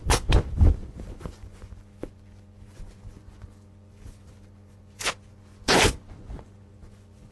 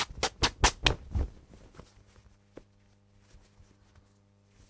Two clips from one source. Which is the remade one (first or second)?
first